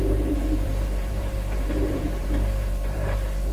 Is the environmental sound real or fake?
fake